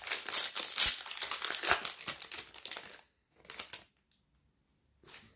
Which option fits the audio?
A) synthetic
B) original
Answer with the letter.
B